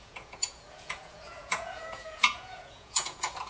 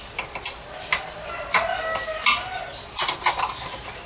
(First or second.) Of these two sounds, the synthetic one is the first